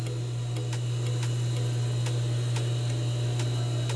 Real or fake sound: real